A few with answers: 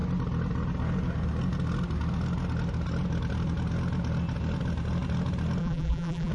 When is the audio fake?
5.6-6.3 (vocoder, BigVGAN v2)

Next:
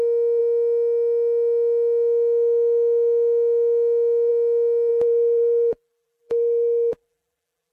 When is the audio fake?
4.9-7.7 (vocoder, BigVGAN v2)

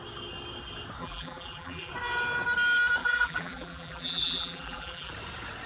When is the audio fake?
1.0-1.9 (vocoder, BigVGAN v2); 3.0-5.1

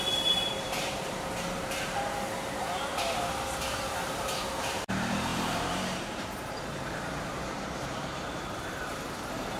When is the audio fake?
0.0-2.9 (vocoder, BigVGAN v2); 3.6-9.6

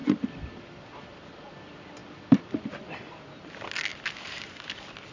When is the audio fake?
none